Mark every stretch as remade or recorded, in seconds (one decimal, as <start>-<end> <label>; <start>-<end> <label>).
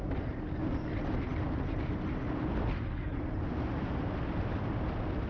0.0-5.3 recorded